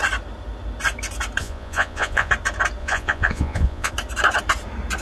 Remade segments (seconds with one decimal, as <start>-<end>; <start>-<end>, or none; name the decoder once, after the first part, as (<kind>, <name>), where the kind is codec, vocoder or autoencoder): 1.4-2.3 (vocoder, Vocos); 2.8-3.9